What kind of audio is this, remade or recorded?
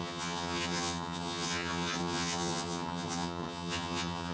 remade